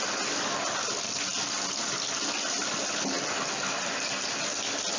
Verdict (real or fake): real